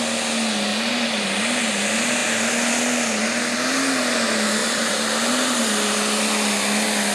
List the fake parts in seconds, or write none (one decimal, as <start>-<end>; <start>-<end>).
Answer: 0.7-1.6; 4.6-5.7